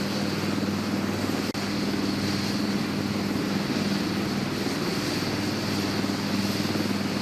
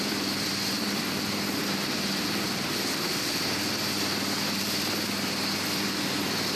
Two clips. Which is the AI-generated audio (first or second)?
second